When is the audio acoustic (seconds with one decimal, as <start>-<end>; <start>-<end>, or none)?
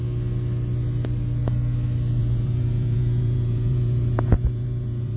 0.0-2.2